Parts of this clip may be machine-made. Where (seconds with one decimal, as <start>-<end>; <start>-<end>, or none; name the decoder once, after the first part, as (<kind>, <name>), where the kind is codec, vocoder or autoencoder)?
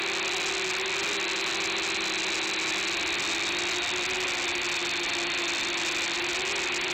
none